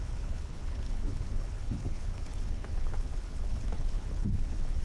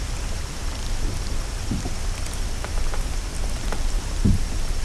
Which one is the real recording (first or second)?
second